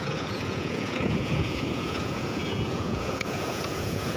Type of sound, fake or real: fake